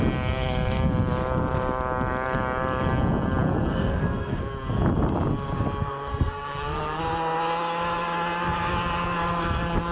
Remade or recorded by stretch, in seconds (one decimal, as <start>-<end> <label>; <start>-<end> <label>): 0.0-3.7 recorded; 3.7-4.4 remade; 4.4-6.1 recorded; 6.1-7.0 remade; 7.0-9.9 recorded